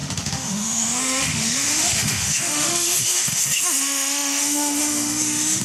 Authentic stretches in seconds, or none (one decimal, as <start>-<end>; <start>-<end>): none